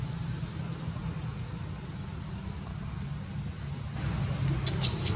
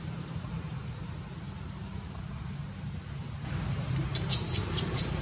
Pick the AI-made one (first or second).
second